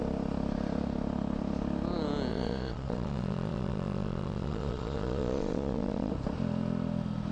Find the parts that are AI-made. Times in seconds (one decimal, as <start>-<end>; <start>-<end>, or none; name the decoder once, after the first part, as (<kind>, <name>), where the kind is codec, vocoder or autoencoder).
2.3-6.1 (vocoder, Vocos)